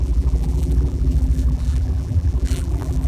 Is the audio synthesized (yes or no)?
yes